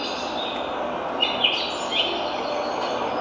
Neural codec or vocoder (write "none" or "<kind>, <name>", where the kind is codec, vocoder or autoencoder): none